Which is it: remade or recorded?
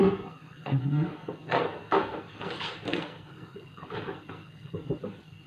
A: remade